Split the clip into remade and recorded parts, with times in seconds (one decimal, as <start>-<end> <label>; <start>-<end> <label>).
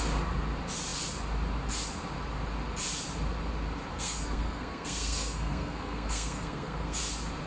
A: 0.0-3.9 recorded; 3.9-7.0 remade; 7.0-7.5 recorded